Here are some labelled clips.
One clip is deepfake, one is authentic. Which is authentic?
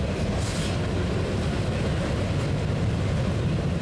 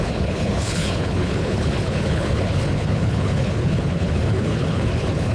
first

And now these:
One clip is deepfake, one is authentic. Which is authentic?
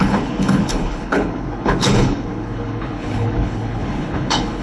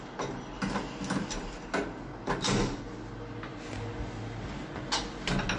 second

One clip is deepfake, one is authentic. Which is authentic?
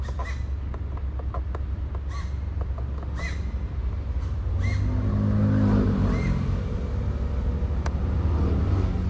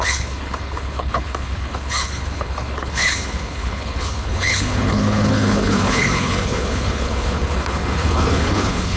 first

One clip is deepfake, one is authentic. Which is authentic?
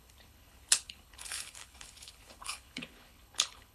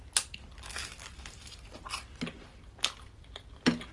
second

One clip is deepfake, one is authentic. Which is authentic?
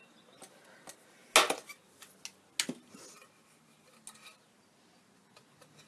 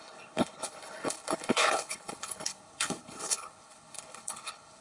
first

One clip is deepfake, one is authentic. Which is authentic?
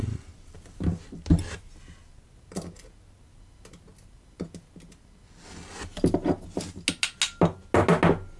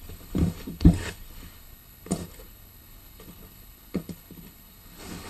first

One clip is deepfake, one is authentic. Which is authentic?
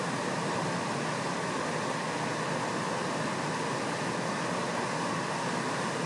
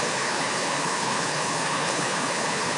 first